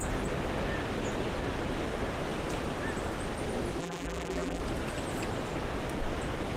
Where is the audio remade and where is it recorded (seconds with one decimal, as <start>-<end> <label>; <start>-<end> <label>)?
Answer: 0.0-3.8 recorded; 3.8-4.6 remade; 4.6-6.6 recorded